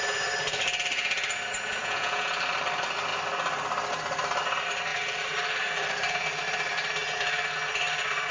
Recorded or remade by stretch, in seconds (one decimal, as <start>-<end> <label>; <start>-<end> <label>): 0.0-1.8 recorded; 1.8-2.3 remade; 2.3-8.3 recorded